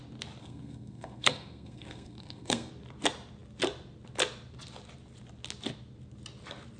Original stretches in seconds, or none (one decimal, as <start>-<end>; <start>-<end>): 0.0-0.4; 2.7-6.8